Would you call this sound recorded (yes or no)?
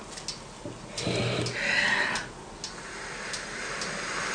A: yes